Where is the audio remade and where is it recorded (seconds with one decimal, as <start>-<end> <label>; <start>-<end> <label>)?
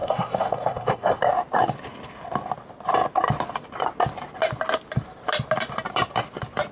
0.0-1.2 remade; 1.2-6.7 recorded